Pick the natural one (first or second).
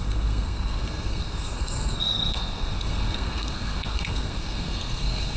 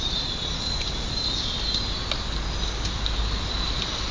second